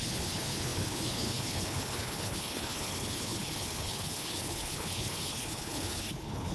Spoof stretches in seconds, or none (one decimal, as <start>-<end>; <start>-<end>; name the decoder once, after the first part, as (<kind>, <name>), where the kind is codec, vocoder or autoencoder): 0.0-6.5 (codec, HILCodec)